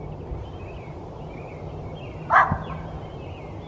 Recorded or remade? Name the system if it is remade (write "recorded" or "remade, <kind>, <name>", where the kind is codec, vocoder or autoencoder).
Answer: recorded